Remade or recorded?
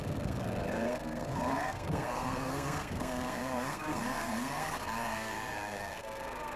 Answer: remade